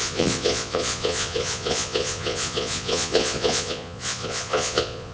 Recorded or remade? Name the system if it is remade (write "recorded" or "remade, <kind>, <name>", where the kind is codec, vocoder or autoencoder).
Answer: remade, vocoder, Vocos